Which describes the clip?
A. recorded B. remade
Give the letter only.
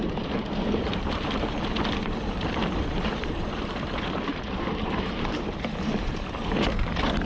B